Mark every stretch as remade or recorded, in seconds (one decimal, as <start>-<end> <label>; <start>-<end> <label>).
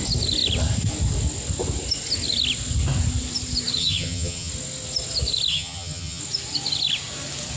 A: 0.0-3.8 recorded; 3.8-4.5 remade; 4.5-5.5 recorded; 5.5-6.2 remade; 6.2-7.6 recorded